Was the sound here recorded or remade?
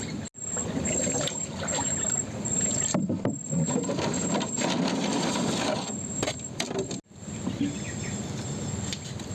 recorded